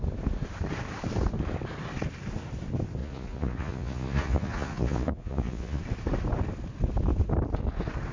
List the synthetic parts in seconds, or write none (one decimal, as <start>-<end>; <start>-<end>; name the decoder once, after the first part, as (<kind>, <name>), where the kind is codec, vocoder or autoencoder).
3.0-5.8 (vocoder, Vocos)